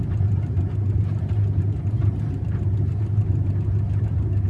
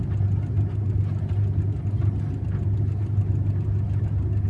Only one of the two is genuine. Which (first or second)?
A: second